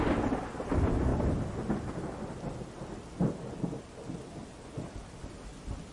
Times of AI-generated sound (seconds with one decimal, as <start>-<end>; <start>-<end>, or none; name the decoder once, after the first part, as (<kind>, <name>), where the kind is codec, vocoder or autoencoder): none